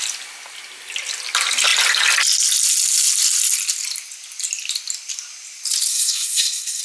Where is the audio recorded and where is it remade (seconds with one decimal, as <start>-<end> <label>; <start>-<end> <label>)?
0.0-5.9 recorded; 5.9-6.8 remade